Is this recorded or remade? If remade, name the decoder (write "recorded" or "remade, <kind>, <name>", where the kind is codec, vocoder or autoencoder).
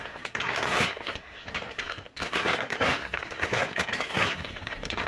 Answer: remade, codec, SNAC